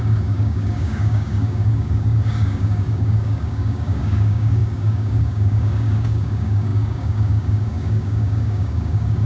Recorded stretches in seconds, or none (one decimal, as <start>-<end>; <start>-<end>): none